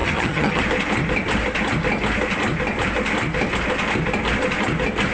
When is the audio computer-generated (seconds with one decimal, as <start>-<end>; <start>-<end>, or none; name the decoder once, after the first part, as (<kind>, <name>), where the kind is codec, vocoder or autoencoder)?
0.0-0.6 (vocoder, HiFi-GAN)